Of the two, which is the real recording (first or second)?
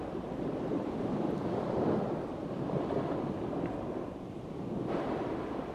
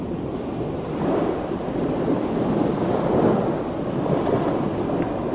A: second